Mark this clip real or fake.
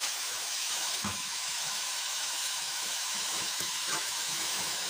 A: fake